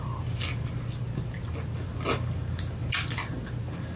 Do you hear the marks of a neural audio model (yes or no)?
no